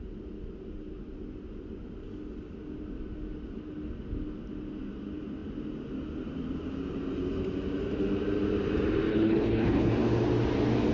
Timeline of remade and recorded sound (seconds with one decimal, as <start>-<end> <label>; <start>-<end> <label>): 0.0-9.1 recorded; 9.1-9.9 remade; 9.9-10.9 recorded